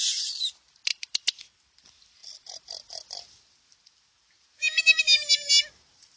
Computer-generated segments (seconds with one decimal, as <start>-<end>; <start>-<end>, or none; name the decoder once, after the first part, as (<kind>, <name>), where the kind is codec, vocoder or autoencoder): 0.9-1.4 (vocoder, BigVGAN v2)